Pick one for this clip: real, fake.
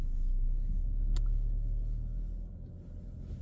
real